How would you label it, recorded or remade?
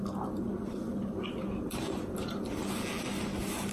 recorded